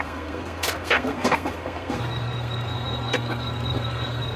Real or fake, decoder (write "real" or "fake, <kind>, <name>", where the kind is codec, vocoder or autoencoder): fake, codec, SNAC